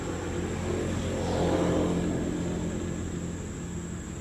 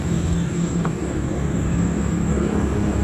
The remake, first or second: second